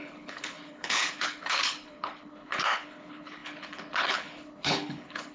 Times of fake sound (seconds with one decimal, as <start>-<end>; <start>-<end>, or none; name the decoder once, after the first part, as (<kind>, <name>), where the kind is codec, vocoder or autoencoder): 0.0-5.3 (codec, HILCodec)